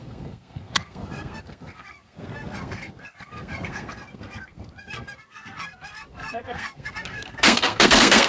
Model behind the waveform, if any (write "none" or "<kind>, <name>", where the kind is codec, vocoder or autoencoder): codec, SNAC